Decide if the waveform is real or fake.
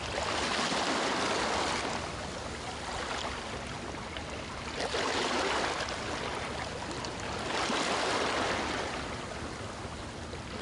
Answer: real